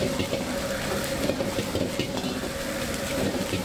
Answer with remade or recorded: recorded